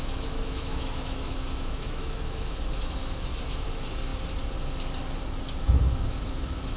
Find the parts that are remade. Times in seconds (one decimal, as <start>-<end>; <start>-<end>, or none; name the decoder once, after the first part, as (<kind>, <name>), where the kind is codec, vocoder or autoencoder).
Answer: 0.0-4.1 (autoencoder, DAC-VAE); 5.6-6.8